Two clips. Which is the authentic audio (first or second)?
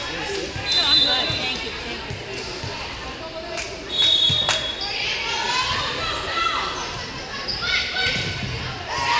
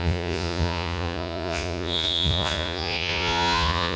first